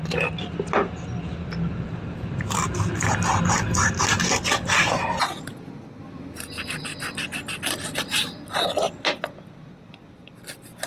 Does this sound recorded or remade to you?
recorded